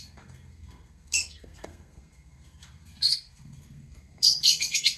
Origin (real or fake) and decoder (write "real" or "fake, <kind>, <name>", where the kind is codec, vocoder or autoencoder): fake, codec, SNAC